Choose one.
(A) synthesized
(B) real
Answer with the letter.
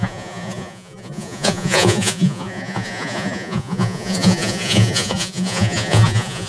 A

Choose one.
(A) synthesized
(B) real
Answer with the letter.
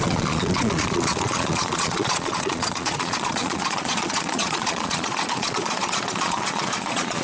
A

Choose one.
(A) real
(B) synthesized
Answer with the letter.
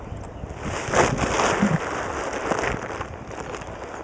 A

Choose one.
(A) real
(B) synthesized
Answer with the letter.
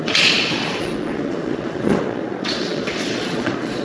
B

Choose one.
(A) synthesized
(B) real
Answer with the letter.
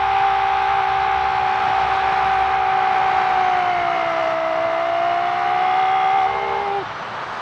B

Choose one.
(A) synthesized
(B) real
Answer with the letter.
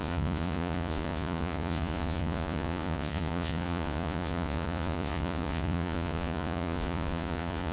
A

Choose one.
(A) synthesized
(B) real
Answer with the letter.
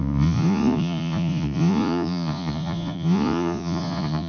A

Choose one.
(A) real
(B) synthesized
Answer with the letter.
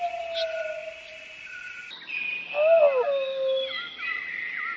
A